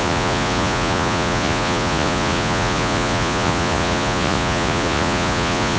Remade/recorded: remade